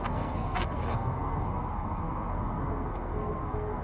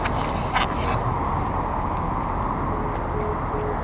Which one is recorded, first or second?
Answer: second